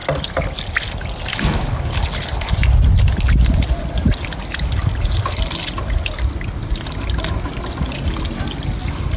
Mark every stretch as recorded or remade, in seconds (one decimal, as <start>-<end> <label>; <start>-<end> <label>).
0.0-1.3 recorded; 1.3-2.0 remade; 2.0-9.2 recorded